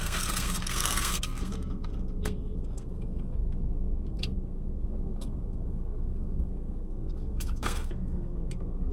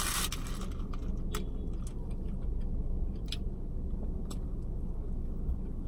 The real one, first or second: second